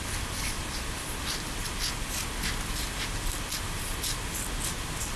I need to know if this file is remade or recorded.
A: recorded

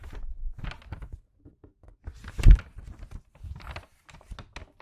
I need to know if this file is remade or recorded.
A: recorded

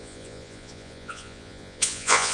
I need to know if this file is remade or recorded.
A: remade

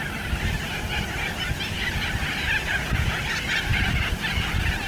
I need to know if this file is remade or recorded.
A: recorded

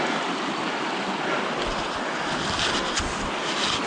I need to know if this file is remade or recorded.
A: recorded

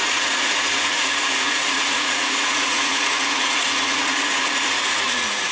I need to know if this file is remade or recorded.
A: remade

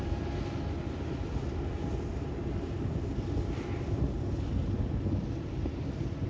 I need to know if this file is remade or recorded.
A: recorded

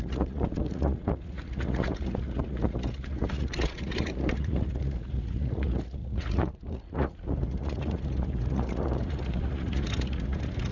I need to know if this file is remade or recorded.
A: remade